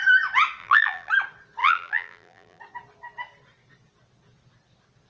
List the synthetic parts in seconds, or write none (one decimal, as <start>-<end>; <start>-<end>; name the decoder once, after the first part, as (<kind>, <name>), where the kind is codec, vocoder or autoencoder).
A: 0.6-1.1 (vocoder, BigVGAN v2); 1.6-2.6